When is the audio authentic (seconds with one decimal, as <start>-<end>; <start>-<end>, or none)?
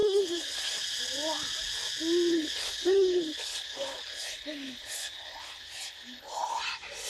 0.7-2.3; 6.6-7.1